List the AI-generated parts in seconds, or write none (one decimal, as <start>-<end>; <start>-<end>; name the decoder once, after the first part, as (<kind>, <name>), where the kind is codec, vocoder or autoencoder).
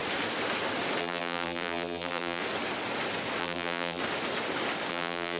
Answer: 1.0-2.4 (vocoder, BigVGAN v2); 3.4-4.0; 4.9-5.4